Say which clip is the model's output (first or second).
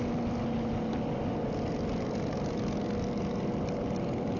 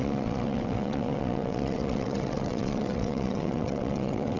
second